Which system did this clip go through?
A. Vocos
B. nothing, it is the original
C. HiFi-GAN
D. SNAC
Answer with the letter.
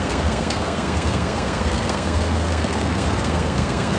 D